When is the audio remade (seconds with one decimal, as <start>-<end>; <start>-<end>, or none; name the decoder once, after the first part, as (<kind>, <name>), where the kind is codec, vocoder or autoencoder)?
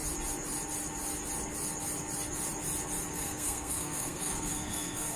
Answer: 3.1-5.2 (codec, SNAC)